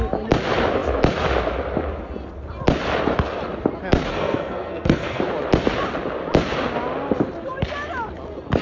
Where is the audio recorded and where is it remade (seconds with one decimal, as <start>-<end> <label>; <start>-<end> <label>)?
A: 0.0-4.1 recorded; 4.1-5.2 remade; 5.2-8.6 recorded